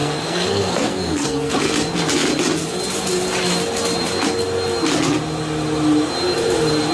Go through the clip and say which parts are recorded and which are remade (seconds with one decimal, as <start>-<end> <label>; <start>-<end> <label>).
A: 0.0-1.6 remade; 1.6-6.9 recorded